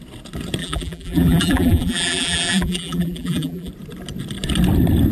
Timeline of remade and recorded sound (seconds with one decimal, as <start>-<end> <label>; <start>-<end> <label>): 0.0-0.6 recorded; 0.6-3.7 remade; 3.7-5.1 recorded